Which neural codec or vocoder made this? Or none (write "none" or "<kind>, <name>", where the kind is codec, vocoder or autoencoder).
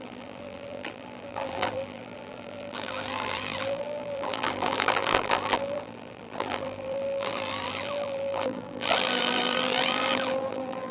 vocoder, BigVGAN v2